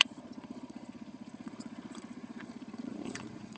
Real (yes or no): no